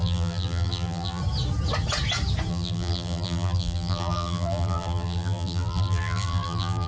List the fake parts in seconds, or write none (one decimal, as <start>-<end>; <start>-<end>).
0.0-1.2; 2.5-6.9